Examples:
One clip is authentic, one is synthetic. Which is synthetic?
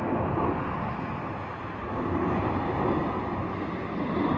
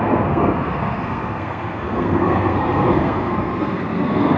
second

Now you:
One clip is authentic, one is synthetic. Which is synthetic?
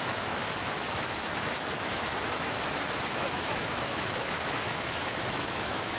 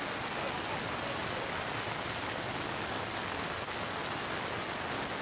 first